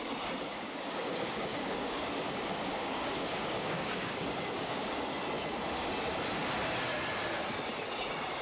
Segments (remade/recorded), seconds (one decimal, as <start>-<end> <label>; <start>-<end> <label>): 0.0-0.5 recorded; 0.5-5.0 remade; 5.0-8.4 recorded